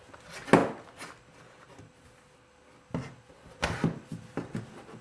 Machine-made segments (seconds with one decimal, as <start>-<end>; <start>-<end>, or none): none